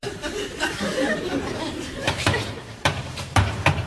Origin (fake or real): fake